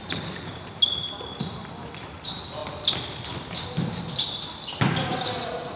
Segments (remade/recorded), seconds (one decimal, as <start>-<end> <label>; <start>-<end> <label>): 0.0-5.8 recorded